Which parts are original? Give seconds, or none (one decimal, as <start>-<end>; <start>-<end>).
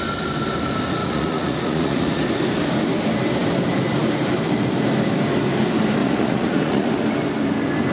0.0-1.0; 2.2-6.0; 6.9-7.9